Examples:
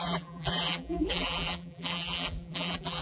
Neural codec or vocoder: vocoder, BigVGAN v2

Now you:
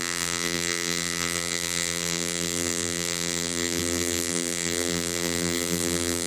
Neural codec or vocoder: vocoder, BigVGAN v2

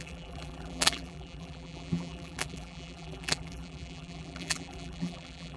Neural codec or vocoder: vocoder, BigVGAN v2